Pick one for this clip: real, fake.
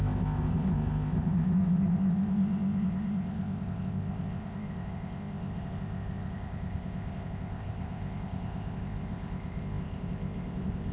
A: fake